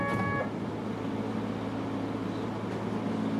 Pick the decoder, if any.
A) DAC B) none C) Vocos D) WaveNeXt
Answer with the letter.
B